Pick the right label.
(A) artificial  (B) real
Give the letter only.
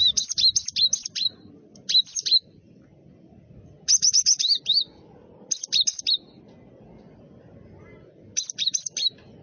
B